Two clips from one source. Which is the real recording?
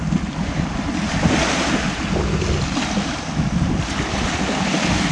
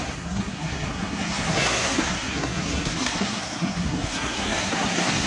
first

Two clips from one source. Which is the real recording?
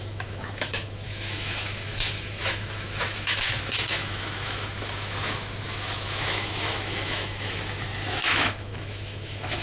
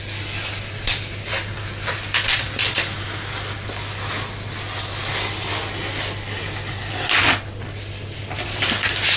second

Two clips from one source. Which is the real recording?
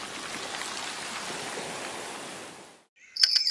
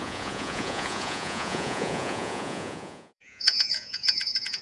first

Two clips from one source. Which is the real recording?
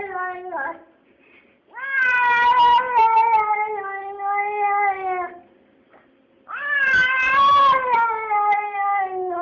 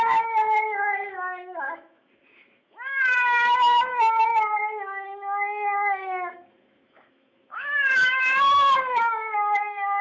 first